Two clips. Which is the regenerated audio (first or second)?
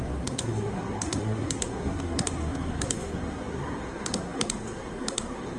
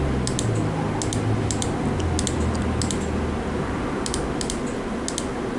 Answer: first